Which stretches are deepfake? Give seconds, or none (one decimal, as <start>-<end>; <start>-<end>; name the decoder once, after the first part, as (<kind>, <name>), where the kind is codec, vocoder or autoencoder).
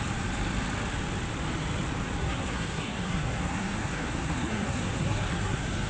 2.2-5.9 (codec, SNAC)